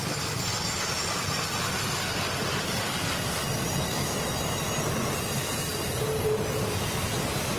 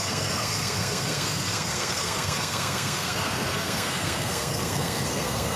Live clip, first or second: first